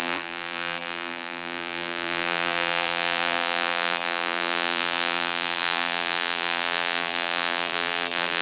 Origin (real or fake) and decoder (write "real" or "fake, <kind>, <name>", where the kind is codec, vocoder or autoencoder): fake, vocoder, BigVGAN v2